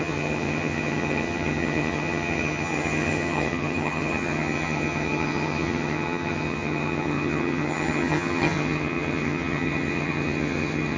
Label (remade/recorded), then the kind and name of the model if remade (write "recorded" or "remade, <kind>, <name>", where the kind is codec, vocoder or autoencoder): remade, vocoder, HiFi-GAN